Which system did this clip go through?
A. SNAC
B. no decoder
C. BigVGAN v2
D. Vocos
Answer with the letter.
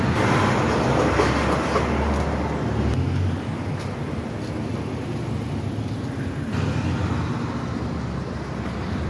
B